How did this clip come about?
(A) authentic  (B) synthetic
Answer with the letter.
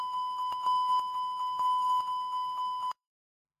B